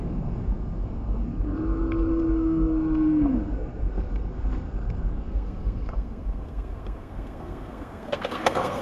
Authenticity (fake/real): fake